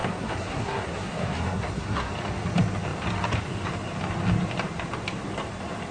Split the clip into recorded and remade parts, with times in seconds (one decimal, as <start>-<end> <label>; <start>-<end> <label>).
0.0-2.1 remade; 2.1-5.9 recorded